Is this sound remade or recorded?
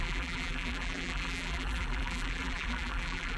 remade